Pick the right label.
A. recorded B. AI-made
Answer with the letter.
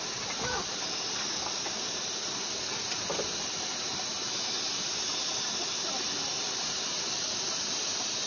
A